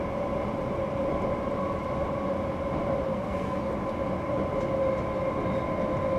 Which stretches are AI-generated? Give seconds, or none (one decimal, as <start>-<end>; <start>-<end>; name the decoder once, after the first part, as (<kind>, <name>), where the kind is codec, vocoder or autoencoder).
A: 3.1-3.7 (codec, SNAC)